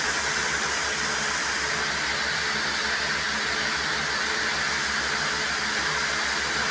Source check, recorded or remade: recorded